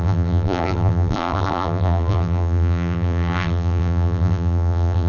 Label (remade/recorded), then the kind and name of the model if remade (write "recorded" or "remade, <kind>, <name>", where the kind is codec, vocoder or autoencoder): remade, vocoder, BigVGAN v2